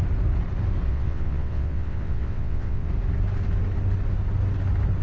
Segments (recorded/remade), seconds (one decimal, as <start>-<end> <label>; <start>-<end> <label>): 0.0-0.9 recorded; 0.9-2.9 remade; 2.9-5.0 recorded